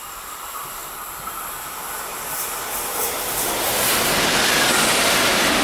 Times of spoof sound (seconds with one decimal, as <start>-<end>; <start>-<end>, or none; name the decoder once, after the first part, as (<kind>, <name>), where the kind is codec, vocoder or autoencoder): 0.0-0.8 (vocoder, BigVGAN v2); 4.2-5.6